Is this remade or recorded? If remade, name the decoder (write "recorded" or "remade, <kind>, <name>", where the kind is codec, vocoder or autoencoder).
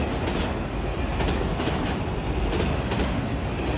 recorded